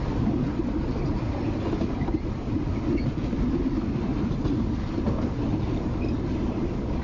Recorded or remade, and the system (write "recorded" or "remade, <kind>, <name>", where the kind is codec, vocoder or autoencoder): recorded